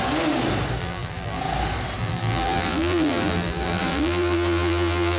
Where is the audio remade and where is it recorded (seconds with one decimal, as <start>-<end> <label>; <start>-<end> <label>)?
0.0-0.8 recorded; 0.8-1.4 remade; 1.4-2.0 recorded; 2.0-5.2 remade